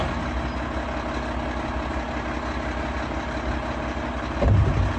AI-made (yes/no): no